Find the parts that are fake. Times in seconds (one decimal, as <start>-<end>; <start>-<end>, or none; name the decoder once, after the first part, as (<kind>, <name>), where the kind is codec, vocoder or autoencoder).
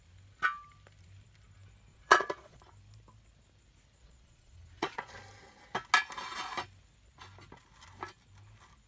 1.9-2.6 (vocoder, Vocos); 4.0-5.1